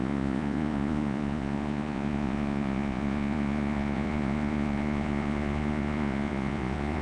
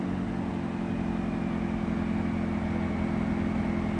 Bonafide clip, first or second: second